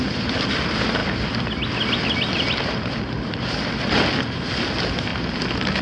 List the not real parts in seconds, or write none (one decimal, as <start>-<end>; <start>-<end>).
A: none